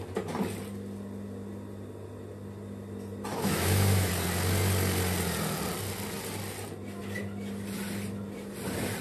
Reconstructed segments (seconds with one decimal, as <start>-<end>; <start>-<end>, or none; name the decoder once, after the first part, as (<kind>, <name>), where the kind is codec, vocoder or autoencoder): 3.3-4.1 (autoencoder, DAC-VAE)